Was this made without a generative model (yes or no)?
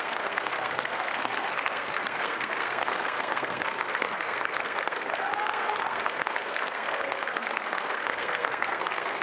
no